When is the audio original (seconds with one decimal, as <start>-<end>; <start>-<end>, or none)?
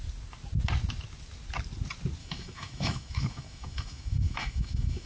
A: 0.0-2.2